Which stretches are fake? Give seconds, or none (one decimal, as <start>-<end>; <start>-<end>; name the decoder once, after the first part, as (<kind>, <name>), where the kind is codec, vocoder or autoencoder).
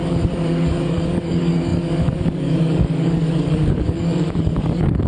0.0-5.1 (codec, DAC)